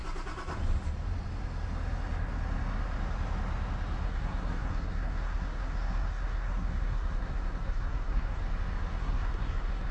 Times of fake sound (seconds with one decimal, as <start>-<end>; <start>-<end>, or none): 4.0-8.4; 8.9-9.9